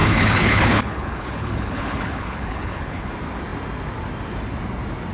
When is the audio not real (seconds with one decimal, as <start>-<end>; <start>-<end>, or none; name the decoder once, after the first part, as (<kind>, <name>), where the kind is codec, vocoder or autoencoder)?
0.0-3.1 (codec, HILCodec)